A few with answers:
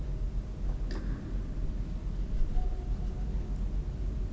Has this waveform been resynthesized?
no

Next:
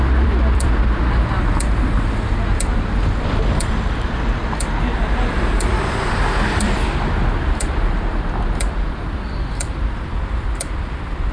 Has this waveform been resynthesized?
yes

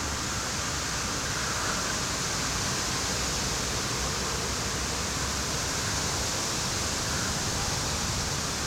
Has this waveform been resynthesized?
no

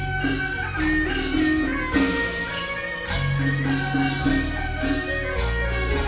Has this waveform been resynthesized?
no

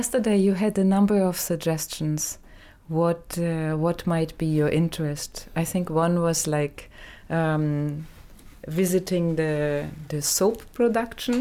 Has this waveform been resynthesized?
no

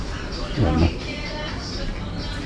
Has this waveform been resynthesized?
yes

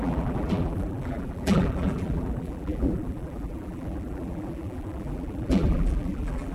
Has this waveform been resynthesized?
yes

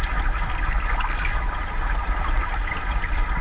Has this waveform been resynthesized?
no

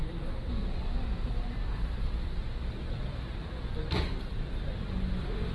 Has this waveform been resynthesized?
yes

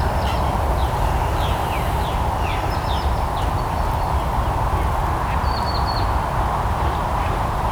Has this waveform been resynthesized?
no